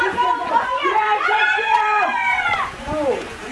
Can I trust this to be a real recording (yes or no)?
no